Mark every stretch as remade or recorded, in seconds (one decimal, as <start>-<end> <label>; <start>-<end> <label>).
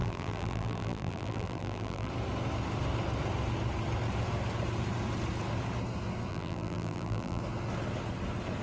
0.0-2.1 remade; 2.1-6.3 recorded; 6.3-7.4 remade; 7.4-8.6 recorded